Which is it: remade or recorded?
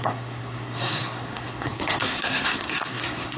remade